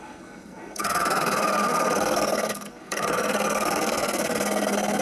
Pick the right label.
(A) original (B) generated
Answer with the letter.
B